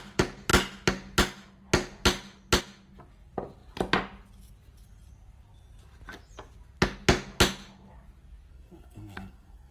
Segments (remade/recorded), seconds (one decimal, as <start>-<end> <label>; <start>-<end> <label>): 0.0-8.5 recorded; 8.5-9.7 remade